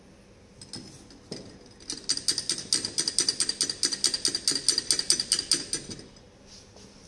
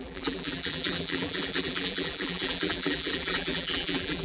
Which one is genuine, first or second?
first